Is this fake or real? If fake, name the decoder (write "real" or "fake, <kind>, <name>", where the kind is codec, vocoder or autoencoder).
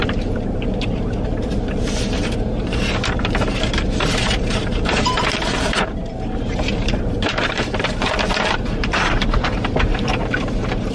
fake, vocoder, BigVGAN v2